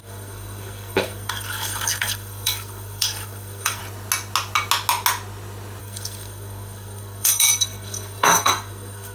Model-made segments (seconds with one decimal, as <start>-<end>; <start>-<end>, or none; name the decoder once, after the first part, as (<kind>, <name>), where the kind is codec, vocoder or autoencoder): 0.0-3.8 (codec, SNAC); 5.8-9.1